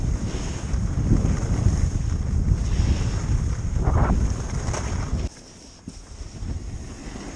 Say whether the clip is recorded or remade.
recorded